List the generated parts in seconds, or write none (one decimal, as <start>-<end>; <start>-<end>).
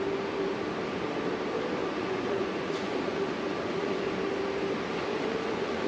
1.8-4.0; 5.1-5.9